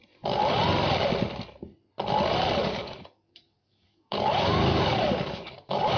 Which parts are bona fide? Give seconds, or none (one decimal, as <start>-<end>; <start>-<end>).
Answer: 0.0-2.6